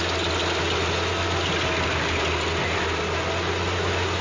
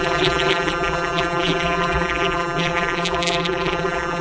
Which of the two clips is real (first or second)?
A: first